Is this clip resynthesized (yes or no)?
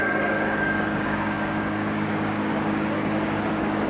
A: yes